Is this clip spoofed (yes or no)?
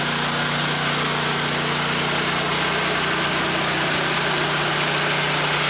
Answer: no